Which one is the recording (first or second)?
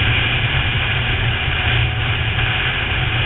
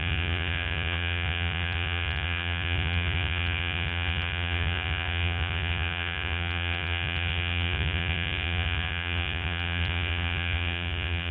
first